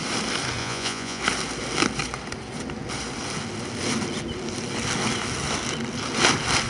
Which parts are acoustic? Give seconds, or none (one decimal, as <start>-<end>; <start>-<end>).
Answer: 0.0-0.6; 1.2-6.7